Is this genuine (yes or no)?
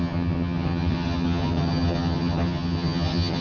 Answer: no